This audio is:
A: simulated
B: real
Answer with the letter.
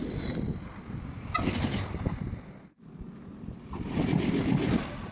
B